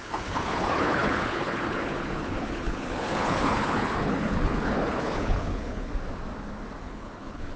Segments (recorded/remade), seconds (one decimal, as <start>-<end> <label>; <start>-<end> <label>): 0.0-5.9 remade; 5.9-6.8 recorded; 6.8-7.6 remade